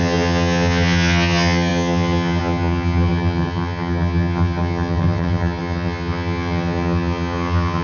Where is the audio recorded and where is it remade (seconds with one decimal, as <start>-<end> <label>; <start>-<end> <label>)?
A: 0.0-7.8 remade